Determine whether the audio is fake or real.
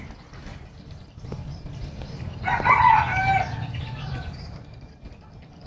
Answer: real